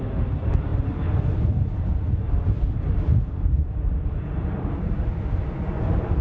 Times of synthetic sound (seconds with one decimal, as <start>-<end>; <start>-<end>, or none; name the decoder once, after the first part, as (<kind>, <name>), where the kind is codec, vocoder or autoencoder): 0.0-0.7 (vocoder, BigVGAN v2); 2.1-6.2